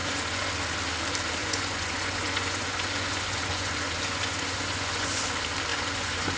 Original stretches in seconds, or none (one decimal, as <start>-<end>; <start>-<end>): 0.5-1.4; 5.2-5.7